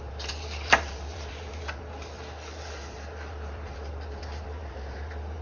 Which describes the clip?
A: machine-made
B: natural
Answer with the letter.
A